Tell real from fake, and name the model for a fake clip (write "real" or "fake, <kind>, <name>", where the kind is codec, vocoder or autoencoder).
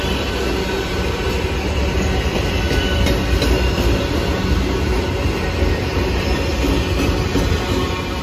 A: real